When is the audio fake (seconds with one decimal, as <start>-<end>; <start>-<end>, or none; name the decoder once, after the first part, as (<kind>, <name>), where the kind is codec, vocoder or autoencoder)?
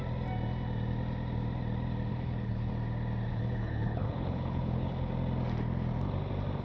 2.1-2.7 (codec, HILCodec); 3.3-5.1